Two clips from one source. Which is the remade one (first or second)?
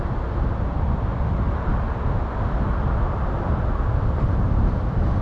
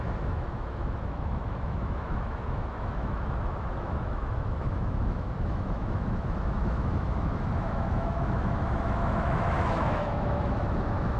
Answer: second